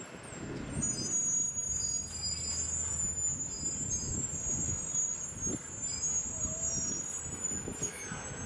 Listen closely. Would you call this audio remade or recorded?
recorded